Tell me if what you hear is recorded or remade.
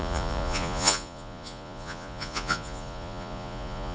remade